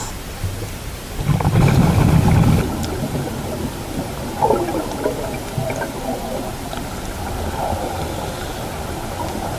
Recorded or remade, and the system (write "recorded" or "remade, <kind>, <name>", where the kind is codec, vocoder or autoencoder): recorded